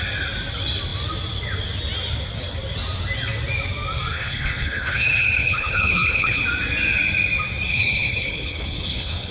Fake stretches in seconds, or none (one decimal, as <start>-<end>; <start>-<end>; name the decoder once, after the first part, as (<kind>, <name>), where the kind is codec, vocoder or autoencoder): 4.1-6.4 (codec, HILCodec); 7.7-9.3